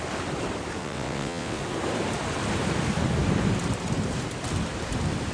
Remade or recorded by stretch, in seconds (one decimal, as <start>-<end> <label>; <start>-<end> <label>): 0.0-0.8 recorded; 0.8-1.6 remade; 1.6-5.3 recorded